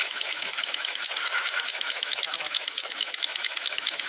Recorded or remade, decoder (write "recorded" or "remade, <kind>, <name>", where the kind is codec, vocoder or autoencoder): remade, autoencoder, DAC-VAE